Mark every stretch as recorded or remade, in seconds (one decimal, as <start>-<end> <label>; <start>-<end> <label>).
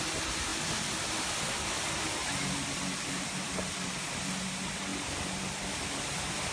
0.0-4.9 recorded; 4.9-6.5 remade